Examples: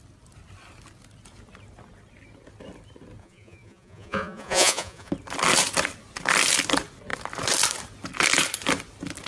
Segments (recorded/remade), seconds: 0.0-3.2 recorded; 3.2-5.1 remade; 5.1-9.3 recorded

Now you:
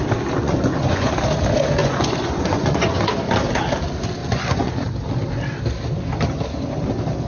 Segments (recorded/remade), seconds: 0.0-0.4 recorded; 0.4-1.1 remade; 1.1-1.8 recorded; 1.8-3.1 remade; 3.1-4.2 recorded; 4.2-4.7 remade; 4.7-7.3 recorded

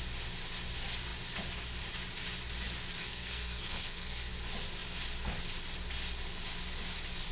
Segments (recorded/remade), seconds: 0.0-3.0 recorded; 3.0-4.3 remade; 4.3-7.3 recorded

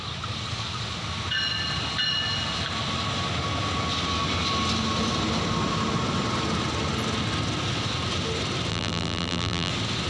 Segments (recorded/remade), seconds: 0.0-8.7 recorded; 8.7-9.7 remade; 9.7-10.1 recorded